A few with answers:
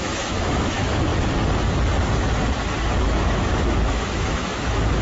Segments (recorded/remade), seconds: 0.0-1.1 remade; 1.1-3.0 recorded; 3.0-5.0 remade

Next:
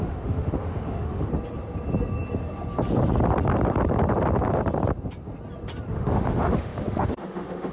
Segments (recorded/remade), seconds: 0.0-1.3 remade; 1.3-5.9 recorded; 5.9-7.7 remade

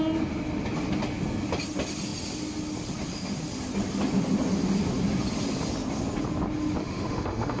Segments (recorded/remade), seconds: 0.0-6.8 recorded; 6.8-7.6 remade